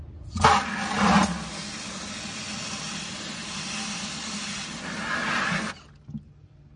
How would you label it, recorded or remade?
recorded